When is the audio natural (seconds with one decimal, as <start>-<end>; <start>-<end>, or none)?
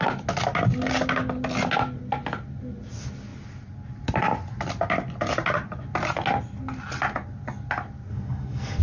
0.0-8.1